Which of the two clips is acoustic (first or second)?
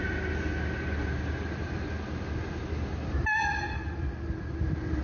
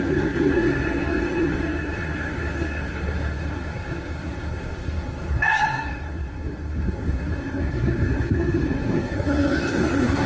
first